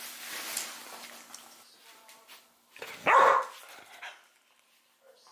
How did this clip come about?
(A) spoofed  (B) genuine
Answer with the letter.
B